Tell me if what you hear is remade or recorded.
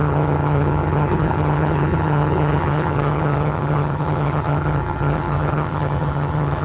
remade